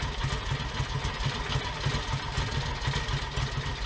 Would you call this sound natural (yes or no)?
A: yes